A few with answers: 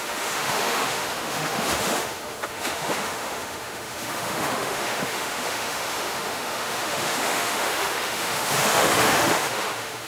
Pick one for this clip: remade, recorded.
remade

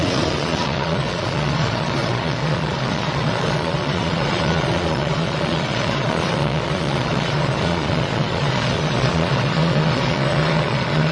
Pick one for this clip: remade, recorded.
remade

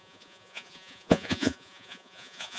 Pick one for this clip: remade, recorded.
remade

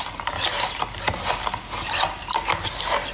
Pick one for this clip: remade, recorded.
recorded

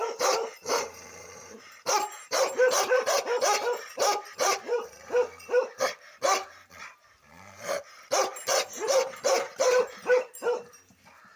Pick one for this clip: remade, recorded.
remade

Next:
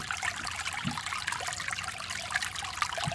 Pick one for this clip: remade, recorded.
recorded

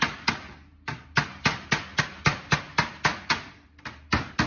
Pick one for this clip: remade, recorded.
recorded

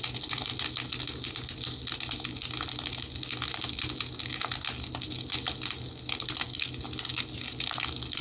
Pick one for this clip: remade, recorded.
recorded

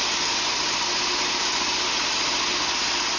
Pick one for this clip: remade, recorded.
recorded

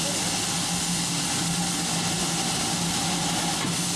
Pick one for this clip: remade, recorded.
recorded